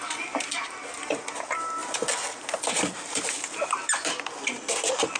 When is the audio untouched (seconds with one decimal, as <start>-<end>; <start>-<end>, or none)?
0.0-5.2